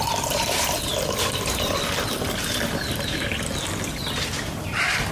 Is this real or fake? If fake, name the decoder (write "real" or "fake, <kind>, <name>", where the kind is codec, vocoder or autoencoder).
fake, vocoder, BigVGAN v2